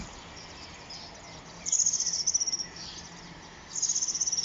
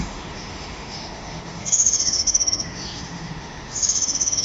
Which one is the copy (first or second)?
second